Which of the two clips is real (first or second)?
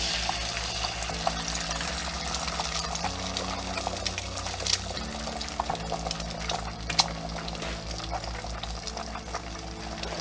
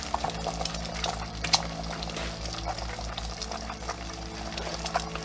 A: first